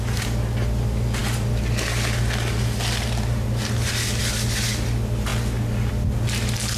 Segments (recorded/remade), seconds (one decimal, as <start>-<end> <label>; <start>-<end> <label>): 0.0-6.8 recorded